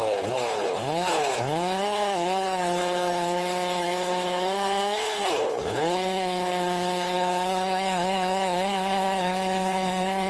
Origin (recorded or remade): remade